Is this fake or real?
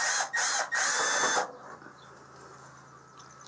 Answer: real